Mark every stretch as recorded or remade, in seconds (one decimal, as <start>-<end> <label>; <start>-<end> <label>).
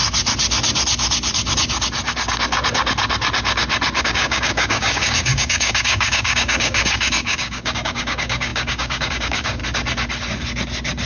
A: 0.0-4.0 recorded; 4.0-9.6 remade; 9.6-11.1 recorded